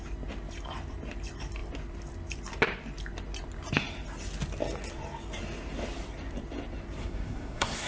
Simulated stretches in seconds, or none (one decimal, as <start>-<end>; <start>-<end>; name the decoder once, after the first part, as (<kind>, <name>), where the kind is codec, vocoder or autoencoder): 7.0-7.9 (codec, SNAC)